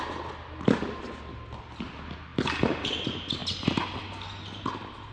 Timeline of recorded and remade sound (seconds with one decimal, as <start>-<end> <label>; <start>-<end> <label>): 0.0-5.1 recorded